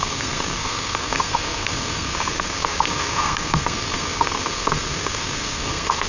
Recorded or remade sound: remade